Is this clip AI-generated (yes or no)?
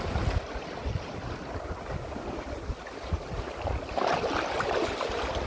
no